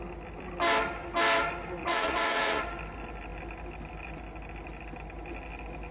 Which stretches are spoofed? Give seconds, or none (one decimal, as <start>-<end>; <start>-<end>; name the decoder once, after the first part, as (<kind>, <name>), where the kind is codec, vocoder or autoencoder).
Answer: 1.8-2.6 (vocoder, Vocos)